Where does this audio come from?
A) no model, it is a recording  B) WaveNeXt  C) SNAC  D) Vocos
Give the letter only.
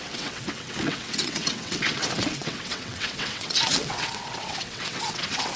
B